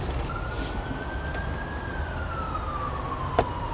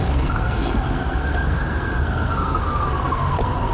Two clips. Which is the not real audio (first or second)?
second